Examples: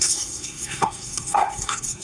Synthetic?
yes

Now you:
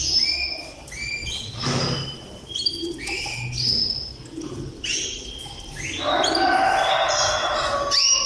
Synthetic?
no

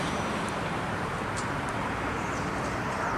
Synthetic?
yes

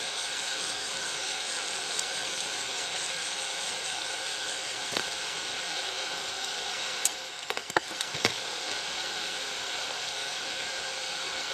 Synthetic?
yes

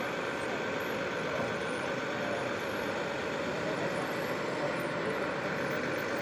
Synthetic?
no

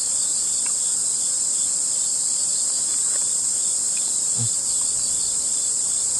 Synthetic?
yes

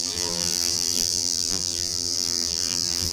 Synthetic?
yes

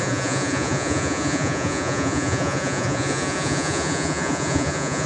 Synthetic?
yes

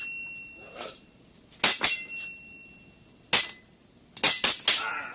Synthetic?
no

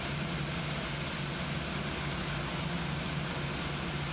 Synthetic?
no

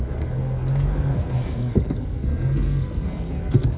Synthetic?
yes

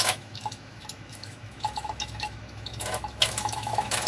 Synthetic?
yes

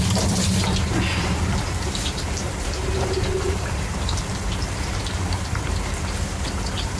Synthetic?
yes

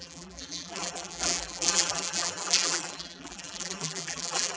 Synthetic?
yes